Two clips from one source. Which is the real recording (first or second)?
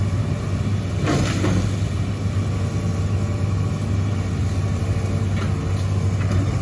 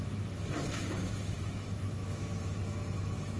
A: first